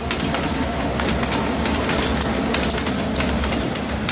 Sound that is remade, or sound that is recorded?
recorded